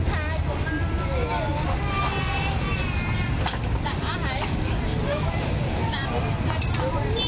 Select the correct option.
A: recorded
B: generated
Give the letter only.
A